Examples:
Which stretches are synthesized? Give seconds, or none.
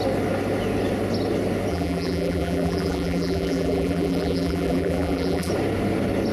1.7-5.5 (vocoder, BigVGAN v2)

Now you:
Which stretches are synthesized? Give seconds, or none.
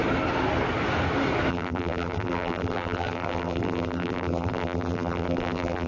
1.5-5.9 (vocoder, BigVGAN v2)